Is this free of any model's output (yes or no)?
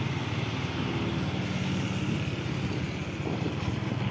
yes